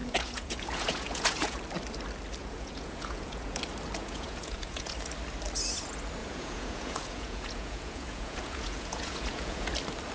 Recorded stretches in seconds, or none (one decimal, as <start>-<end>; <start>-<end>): 1.6-2.4; 3.6-4.0; 4.9-6.2; 9.7-10.1

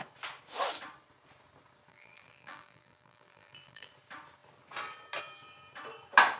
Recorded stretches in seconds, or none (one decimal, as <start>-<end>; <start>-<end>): 0.0-1.9; 3.9-6.4

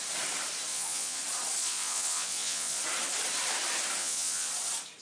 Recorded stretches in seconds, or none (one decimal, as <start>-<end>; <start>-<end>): 0.0-0.7; 1.2-1.6; 2.8-4.0; 4.5-5.0